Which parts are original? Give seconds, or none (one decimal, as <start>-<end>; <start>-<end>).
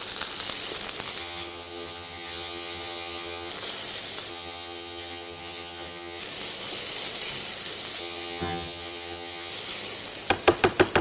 0.0-1.2; 3.5-4.3; 6.2-8.0; 9.5-11.0